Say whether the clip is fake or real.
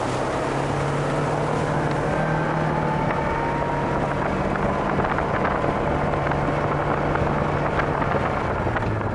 real